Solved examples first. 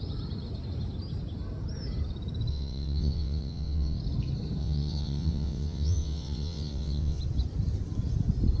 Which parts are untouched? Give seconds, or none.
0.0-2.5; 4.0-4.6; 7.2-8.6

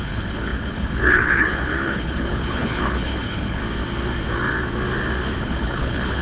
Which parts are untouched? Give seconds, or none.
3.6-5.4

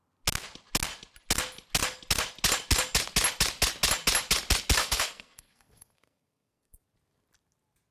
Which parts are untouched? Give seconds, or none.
0.0-4.8; 6.8-7.9